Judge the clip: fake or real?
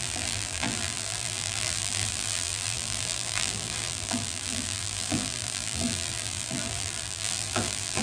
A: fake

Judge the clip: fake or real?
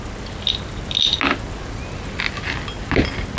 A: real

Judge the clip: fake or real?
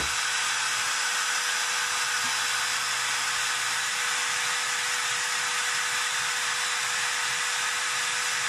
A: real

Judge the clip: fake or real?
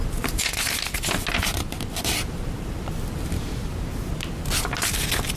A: real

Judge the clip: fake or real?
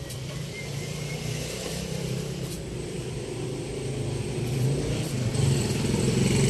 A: fake